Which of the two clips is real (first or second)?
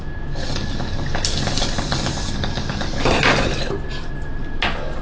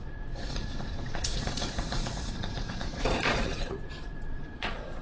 first